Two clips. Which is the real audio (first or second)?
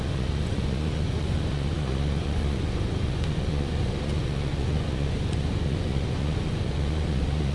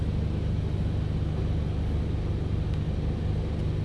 second